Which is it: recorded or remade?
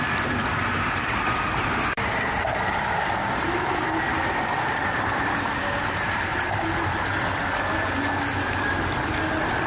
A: remade